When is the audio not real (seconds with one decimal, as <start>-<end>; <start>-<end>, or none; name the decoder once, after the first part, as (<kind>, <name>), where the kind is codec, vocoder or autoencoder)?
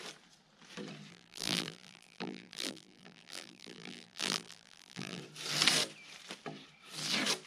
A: 1.1-5.2 (vocoder, BigVGAN v2)